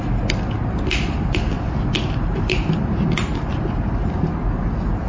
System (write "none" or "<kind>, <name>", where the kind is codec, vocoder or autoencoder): none